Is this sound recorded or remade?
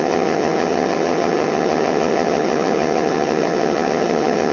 remade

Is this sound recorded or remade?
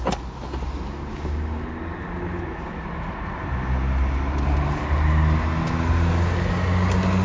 recorded